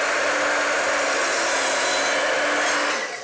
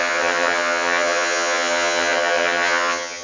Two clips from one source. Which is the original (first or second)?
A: first